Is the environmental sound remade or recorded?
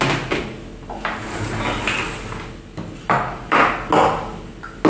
recorded